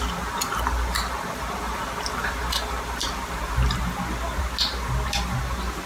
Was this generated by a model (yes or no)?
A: no